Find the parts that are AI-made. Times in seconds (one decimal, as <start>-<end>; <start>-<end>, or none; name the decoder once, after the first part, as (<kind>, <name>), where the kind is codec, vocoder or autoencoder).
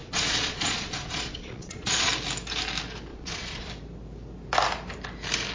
0.0-2.1 (vocoder, Vocos); 3.1-3.7